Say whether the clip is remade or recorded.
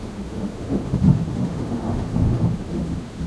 remade